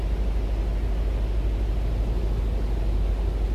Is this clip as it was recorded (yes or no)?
yes